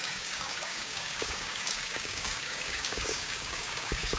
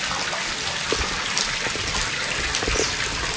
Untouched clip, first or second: second